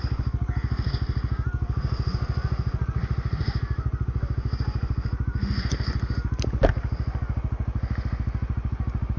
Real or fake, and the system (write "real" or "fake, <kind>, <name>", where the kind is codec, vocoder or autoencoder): real